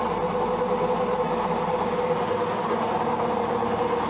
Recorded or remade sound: recorded